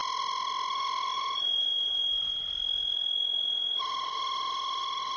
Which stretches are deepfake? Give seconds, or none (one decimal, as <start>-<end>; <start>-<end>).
1.2-1.7; 4.8-5.2